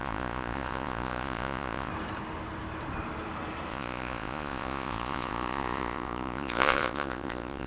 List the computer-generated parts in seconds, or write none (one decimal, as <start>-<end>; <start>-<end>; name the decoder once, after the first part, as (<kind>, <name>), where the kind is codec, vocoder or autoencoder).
0.0-1.9 (vocoder, Vocos); 3.7-7.7